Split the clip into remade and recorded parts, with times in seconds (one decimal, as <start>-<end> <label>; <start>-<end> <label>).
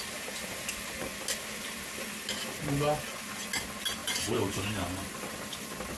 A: 0.0-4.0 recorded; 4.0-5.1 remade; 5.1-6.0 recorded